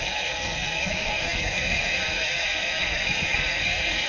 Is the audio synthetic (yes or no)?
yes